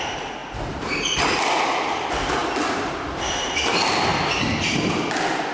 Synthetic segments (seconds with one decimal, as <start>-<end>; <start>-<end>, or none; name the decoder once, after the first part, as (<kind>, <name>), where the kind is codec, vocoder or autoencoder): none